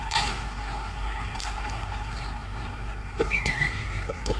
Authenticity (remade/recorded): remade